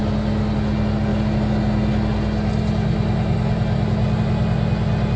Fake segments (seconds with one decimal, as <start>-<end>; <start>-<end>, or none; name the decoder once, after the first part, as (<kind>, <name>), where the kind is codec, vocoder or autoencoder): none